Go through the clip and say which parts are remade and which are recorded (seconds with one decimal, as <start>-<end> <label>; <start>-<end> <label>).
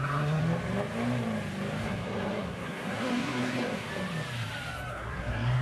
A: 0.0-0.4 remade; 0.4-1.8 recorded; 1.8-3.9 remade; 3.9-4.9 recorded; 4.9-5.6 remade